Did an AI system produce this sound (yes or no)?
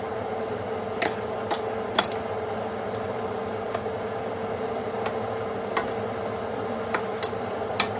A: no